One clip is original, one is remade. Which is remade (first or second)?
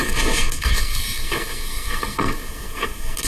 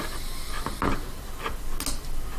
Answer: first